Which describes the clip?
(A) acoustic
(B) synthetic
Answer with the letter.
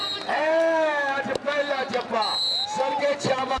A